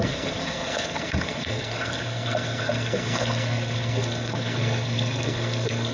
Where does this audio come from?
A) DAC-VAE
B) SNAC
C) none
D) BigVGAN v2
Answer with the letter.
B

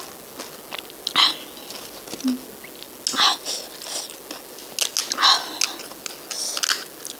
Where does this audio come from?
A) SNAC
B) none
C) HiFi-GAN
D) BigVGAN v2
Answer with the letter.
B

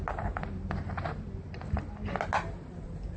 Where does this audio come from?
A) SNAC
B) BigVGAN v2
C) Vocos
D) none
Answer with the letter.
D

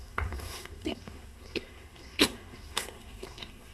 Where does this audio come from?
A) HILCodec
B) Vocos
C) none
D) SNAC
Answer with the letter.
D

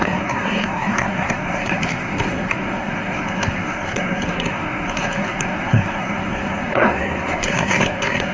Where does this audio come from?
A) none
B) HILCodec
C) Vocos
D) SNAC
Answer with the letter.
D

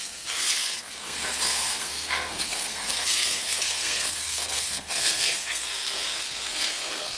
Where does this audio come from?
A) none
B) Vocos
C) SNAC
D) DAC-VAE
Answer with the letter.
C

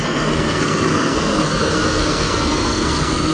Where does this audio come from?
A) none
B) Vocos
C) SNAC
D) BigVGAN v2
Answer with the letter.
C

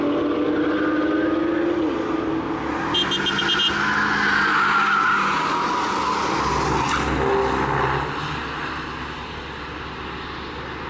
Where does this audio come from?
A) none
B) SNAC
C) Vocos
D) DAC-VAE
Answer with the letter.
A